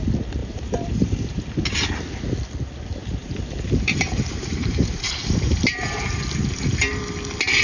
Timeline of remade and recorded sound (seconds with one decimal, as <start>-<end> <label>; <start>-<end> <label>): 0.0-0.4 recorded; 0.4-1.4 remade; 1.4-3.0 recorded; 3.0-7.0 remade; 7.0-7.6 recorded